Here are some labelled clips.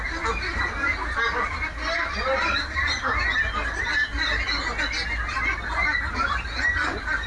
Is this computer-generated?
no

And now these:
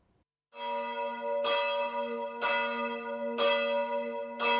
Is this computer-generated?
no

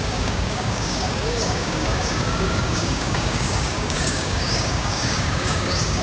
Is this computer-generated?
yes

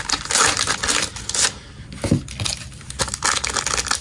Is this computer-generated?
no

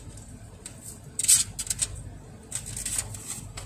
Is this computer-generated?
no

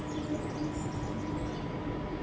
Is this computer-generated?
no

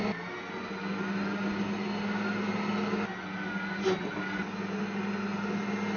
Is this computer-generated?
no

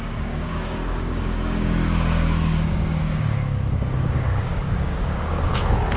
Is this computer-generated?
yes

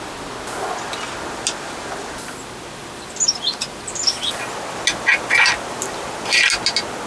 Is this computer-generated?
no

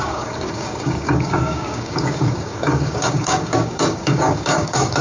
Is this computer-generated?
yes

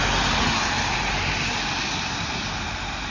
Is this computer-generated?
no